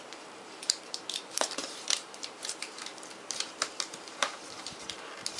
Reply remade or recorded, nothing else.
remade